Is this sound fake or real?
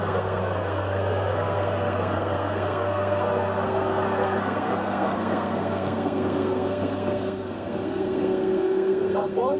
fake